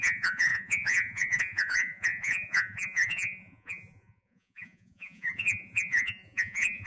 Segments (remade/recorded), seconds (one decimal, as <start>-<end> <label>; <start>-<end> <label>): 0.0-6.9 remade